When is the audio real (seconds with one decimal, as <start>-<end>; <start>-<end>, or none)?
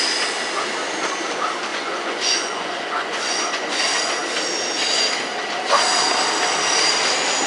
0.0-1.7; 3.8-7.5